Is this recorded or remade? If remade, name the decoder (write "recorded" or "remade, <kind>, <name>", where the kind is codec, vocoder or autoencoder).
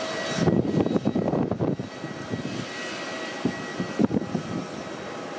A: recorded